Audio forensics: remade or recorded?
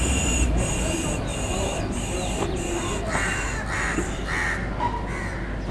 recorded